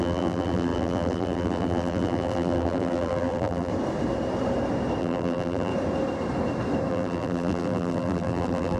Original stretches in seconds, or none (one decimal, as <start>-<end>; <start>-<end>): 3.7-5.0; 5.7-6.9